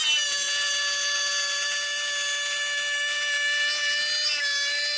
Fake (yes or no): no